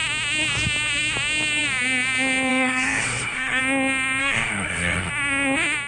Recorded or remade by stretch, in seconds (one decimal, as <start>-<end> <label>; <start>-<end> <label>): 0.0-2.5 recorded; 2.5-3.6 remade; 3.6-4.2 recorded; 4.2-5.1 remade; 5.1-5.9 recorded